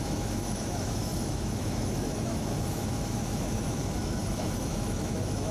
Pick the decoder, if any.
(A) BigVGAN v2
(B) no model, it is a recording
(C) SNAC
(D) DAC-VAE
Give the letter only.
D